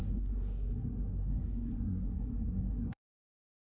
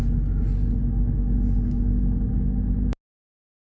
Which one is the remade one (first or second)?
first